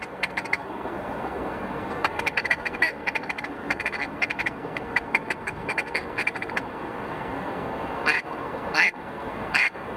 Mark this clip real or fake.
fake